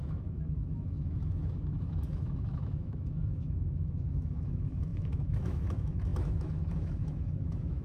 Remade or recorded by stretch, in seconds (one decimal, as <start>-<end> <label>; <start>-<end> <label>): 0.0-7.8 remade